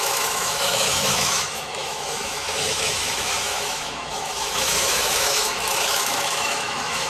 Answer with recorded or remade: remade